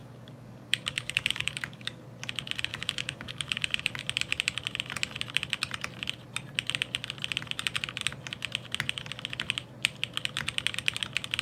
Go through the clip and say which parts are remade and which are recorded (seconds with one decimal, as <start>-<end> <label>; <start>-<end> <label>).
0.0-2.0 remade; 2.0-2.7 recorded; 2.7-4.0 remade; 4.0-11.4 recorded